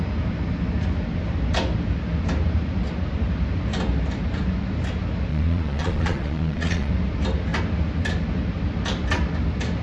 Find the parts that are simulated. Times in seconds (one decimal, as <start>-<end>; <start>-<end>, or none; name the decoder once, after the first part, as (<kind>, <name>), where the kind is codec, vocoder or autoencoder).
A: 5.3-6.9 (vocoder, Vocos)